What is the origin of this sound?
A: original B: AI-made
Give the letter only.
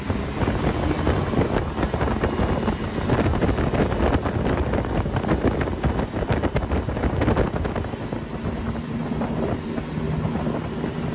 A